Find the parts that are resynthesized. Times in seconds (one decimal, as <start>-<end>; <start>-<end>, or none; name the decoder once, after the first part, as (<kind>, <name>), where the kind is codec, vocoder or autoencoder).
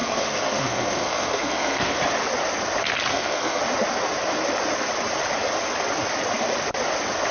0.0-2.0 (codec, SNAC); 3.1-3.6